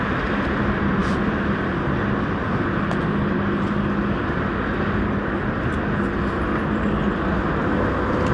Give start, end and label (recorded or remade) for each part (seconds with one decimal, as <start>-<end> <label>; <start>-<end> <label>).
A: 0.0-8.3 recorded

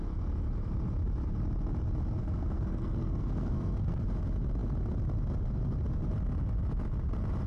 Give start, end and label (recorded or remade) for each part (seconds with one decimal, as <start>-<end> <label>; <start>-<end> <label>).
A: 0.0-2.2 recorded; 2.2-4.0 remade; 4.0-7.5 recorded

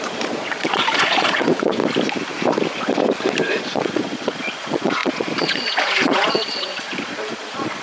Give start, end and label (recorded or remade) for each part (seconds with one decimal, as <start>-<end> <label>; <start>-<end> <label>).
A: 0.0-1.8 remade; 1.8-3.4 recorded; 3.4-7.8 remade

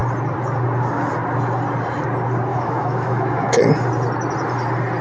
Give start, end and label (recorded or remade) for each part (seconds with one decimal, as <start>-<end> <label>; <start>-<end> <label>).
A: 0.0-2.5 recorded; 2.5-3.6 remade; 3.6-5.0 recorded

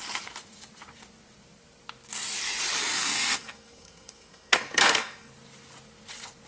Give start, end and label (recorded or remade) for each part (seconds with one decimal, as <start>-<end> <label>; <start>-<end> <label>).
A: 0.0-3.0 recorded; 3.0-5.3 remade; 5.3-6.5 recorded

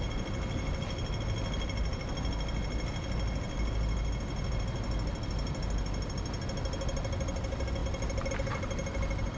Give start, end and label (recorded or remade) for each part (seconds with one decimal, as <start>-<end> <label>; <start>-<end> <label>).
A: 0.0-9.4 recorded

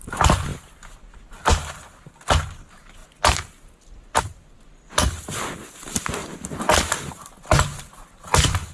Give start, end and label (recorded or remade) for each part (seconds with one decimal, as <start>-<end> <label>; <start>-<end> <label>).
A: 0.0-8.7 recorded

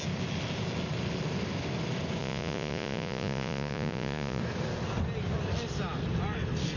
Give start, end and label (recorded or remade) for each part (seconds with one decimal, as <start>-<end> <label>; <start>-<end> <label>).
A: 0.0-2.2 recorded; 2.2-4.4 remade; 4.4-6.8 recorded